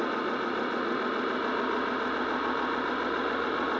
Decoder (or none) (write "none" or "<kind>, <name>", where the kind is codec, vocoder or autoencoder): none